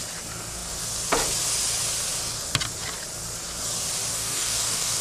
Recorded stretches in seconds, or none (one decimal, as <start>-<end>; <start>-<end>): 0.0-4.1